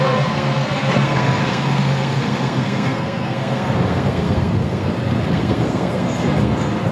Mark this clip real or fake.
fake